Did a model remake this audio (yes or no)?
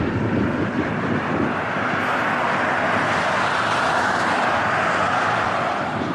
no